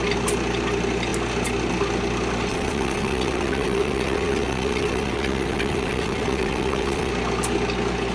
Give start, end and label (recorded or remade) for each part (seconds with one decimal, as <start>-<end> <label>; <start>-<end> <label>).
0.0-2.5 recorded; 2.5-7.1 remade; 7.1-8.1 recorded